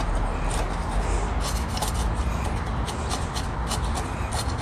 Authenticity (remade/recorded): recorded